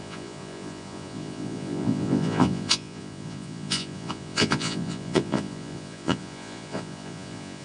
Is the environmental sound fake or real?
fake